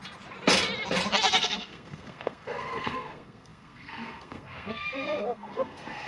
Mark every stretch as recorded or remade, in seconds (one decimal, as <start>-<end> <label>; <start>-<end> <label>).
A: 0.0-1.4 recorded; 1.4-6.1 remade